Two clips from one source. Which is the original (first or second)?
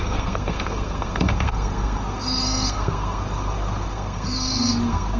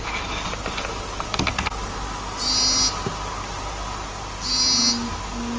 second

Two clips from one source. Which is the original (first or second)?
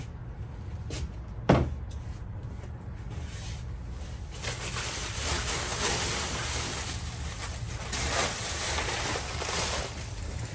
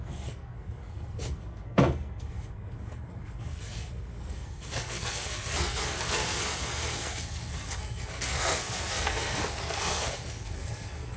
first